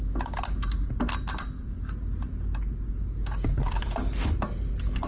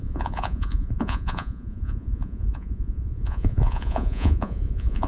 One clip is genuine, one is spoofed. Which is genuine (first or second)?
first